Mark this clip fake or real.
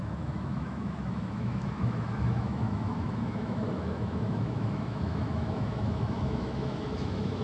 fake